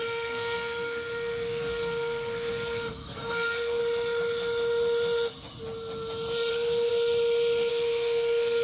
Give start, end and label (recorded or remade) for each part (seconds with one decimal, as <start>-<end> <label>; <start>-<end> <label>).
0.0-3.8 remade; 3.8-6.5 recorded; 6.5-6.9 remade; 6.9-7.7 recorded; 7.7-8.6 remade